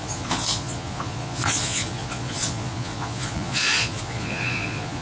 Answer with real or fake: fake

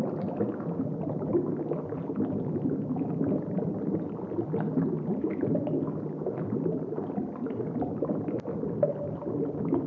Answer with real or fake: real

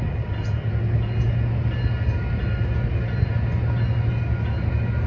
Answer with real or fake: real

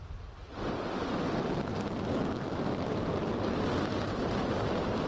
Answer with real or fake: real